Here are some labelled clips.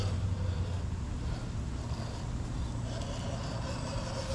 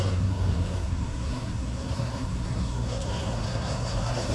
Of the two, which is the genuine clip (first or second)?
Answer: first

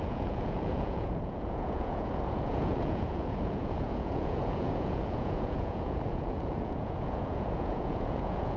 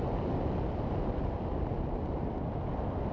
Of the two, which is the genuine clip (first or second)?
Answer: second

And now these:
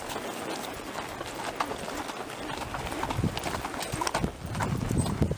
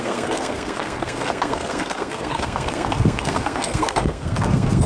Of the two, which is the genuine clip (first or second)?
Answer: first